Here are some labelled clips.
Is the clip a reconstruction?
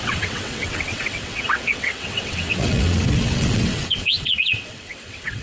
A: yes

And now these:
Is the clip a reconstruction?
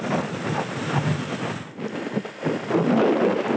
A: no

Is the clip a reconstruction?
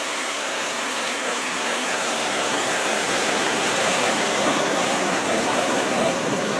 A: yes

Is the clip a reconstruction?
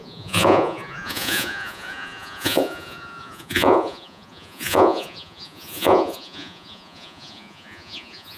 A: yes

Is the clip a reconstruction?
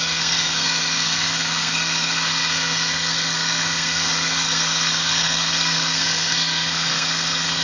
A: yes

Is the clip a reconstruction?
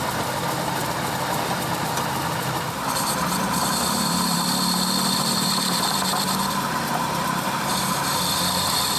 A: yes